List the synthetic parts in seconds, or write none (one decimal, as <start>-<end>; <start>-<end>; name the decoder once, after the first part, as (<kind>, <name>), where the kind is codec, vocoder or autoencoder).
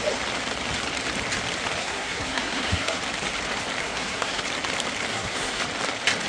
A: 1.8-3.0 (codec, SNAC); 3.8-4.4; 5.1-5.6